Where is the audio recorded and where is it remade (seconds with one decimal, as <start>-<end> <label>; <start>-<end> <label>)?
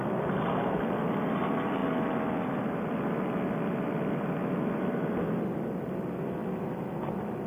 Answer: 0.0-7.5 recorded